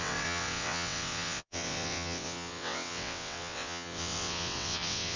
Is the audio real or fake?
fake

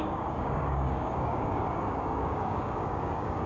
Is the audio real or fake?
fake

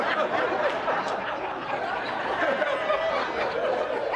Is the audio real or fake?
real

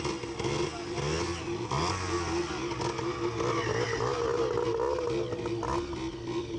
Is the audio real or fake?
real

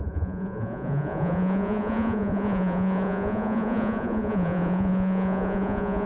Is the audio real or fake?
fake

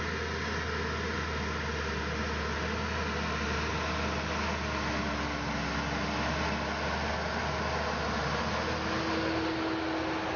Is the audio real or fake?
real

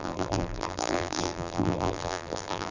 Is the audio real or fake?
fake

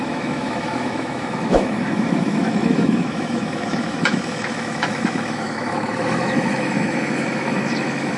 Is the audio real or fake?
fake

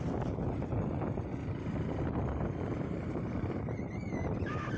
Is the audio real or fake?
fake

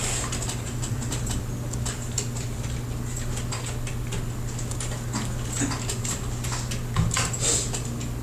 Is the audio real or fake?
real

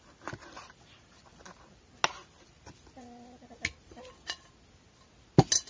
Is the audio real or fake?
real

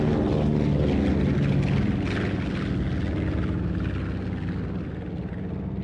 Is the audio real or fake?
real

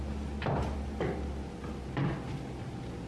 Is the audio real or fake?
real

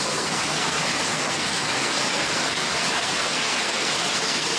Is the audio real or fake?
fake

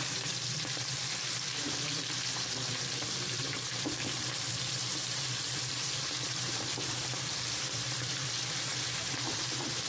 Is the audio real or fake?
fake